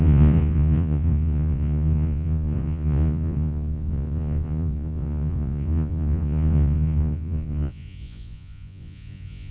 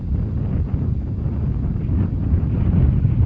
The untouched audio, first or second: second